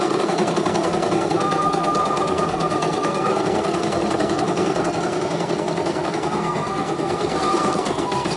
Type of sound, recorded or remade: remade